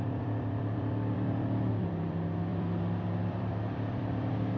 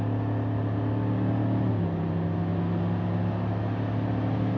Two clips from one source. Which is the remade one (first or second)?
first